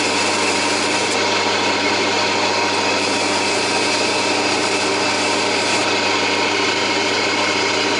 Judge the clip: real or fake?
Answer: real